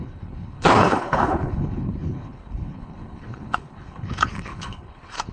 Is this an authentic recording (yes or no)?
no